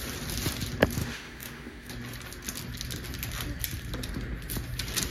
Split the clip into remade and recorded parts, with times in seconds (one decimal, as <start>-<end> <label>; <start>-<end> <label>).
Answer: 0.0-1.0 recorded; 1.0-1.9 remade; 1.9-5.1 recorded